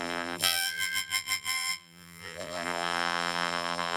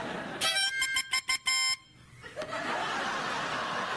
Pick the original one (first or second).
second